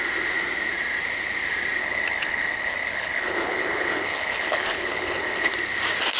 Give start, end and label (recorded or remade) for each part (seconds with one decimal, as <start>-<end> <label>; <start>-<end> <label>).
0.0-1.8 recorded; 1.8-5.5 remade; 5.5-6.2 recorded

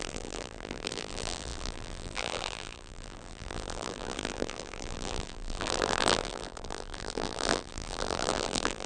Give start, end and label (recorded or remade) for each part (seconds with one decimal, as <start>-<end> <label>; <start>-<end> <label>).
0.0-8.9 remade